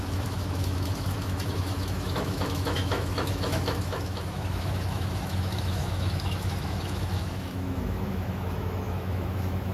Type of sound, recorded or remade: remade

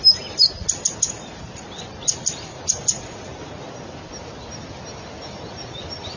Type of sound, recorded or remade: recorded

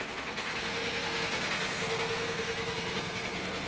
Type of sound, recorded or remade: remade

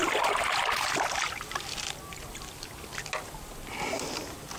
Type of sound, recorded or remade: recorded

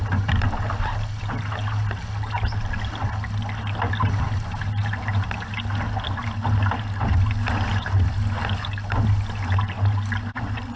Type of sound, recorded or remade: recorded